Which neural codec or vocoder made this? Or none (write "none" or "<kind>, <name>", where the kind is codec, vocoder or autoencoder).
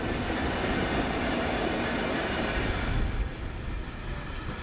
none